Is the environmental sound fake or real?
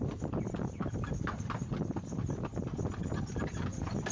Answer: real